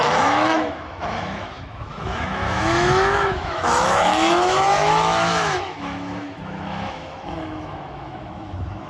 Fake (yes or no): yes